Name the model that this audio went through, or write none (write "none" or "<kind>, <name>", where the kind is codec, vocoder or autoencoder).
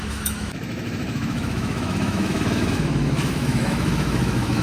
autoencoder, DAC-VAE